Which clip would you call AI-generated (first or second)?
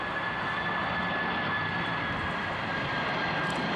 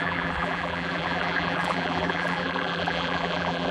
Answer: second